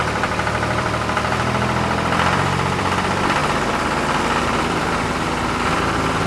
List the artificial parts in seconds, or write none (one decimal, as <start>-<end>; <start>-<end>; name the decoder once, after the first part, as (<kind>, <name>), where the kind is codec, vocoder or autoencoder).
0.0-3.4 (vocoder, BigVGAN v2); 4.2-6.3